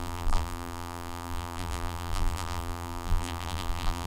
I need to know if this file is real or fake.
fake